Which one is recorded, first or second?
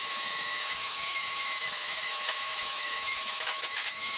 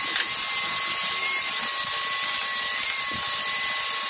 second